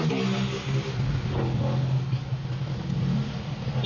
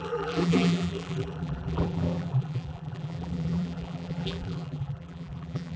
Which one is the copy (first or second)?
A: second